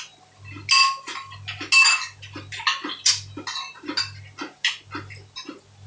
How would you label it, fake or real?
real